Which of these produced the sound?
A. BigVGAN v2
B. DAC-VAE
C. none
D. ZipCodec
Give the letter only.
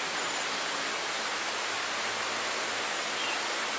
C